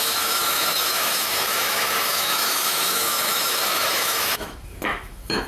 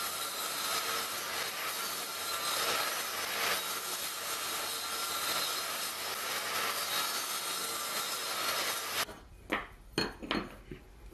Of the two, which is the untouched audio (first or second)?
second